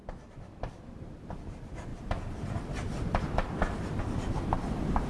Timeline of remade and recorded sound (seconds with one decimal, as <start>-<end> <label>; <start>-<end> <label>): 0.0-0.9 recorded; 0.9-1.9 remade; 1.9-4.0 recorded; 4.0-5.1 remade